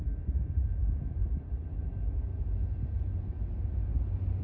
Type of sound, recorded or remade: recorded